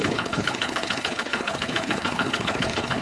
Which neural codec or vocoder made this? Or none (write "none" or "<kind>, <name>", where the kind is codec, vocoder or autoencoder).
codec, HILCodec